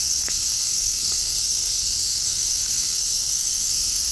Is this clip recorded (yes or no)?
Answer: no